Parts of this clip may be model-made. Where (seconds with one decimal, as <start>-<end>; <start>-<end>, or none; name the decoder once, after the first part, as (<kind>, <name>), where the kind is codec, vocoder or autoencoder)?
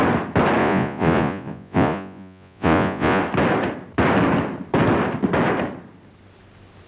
0.6-3.2 (vocoder, Vocos)